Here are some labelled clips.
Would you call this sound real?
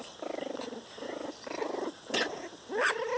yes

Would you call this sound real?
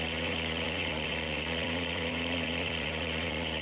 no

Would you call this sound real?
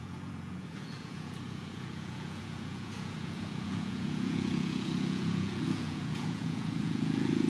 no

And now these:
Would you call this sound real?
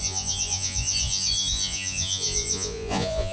no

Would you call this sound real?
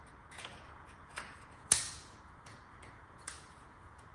no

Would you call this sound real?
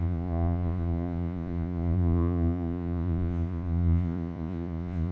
no